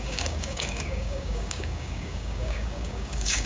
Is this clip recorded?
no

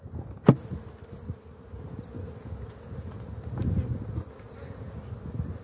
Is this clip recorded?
yes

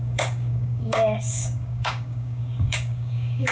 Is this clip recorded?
no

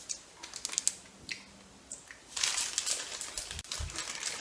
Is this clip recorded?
yes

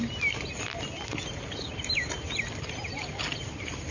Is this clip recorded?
yes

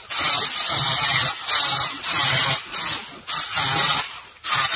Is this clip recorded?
yes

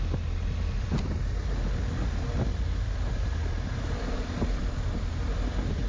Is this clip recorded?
yes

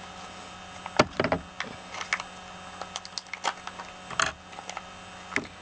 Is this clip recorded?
yes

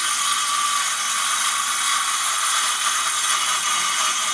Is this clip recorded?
yes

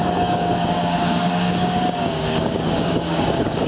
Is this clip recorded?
no